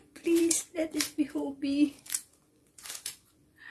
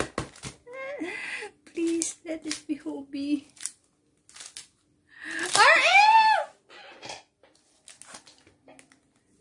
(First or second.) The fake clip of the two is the first